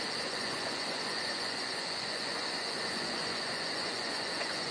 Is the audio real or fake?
fake